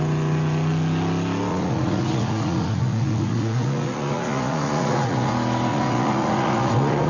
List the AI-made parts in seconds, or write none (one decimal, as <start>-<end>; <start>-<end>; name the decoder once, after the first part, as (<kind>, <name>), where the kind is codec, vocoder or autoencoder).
1.5-5.3 (vocoder, Vocos); 5.7-7.1